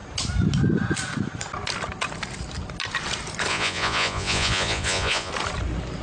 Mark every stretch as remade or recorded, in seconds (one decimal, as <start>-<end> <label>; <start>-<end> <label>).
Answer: 0.0-3.5 recorded; 3.5-5.3 remade; 5.3-6.0 recorded